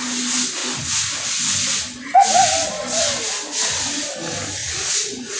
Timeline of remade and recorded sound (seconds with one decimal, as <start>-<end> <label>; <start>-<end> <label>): 0.0-4.6 recorded; 4.6-5.4 remade